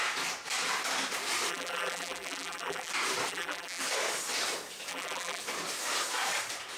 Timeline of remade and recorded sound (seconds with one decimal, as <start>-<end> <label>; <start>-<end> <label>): 0.0-1.5 recorded; 1.5-2.9 remade; 2.9-3.3 recorded; 3.3-3.8 remade; 3.8-4.9 recorded; 4.9-5.4 remade; 5.4-6.8 recorded